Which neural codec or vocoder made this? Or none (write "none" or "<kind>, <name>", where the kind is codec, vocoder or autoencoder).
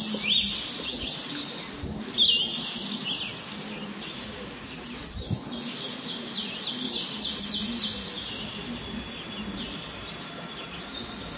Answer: none